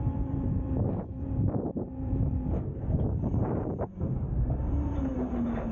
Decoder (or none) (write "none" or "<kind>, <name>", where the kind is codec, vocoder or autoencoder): vocoder, BigVGAN v2